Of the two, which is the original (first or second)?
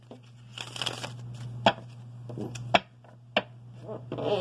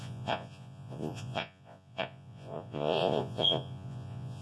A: first